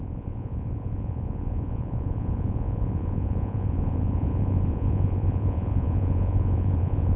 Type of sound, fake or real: fake